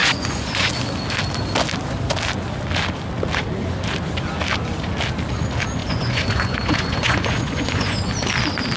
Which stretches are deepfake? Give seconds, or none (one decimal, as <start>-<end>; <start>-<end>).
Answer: 0.0-0.7; 5.8-8.1

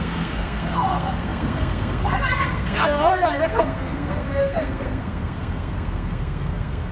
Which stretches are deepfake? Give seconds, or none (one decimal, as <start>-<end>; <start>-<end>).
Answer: 0.0-6.9

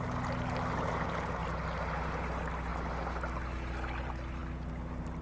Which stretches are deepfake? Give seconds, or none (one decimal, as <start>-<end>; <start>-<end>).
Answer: none

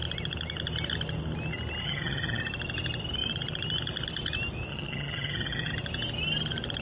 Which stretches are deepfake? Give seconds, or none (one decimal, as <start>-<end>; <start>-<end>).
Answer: 1.8-2.4; 4.7-5.7

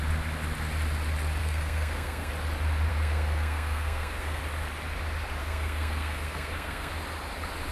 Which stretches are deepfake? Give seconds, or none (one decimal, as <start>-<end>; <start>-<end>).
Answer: 1.4-2.3; 2.9-4.4; 5.4-6.9

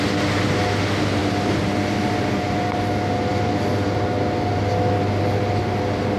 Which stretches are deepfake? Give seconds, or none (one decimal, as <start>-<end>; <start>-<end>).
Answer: none